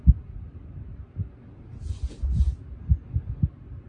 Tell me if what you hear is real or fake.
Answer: real